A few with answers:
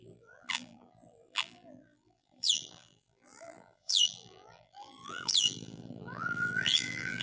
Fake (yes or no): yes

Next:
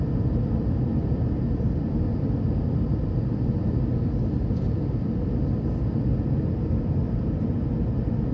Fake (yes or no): no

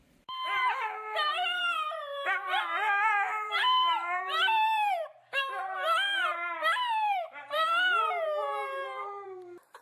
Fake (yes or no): yes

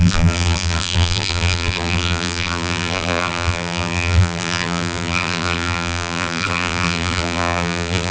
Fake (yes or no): yes